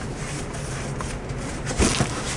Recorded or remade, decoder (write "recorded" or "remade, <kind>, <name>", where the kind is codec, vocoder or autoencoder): recorded